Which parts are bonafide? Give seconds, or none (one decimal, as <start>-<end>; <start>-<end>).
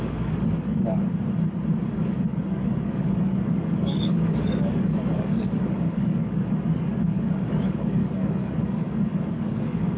1.0-1.9